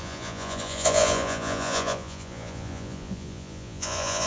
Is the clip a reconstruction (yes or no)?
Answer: yes